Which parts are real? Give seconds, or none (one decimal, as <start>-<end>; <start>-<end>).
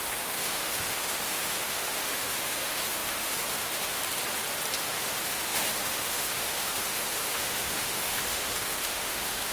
4.0-4.8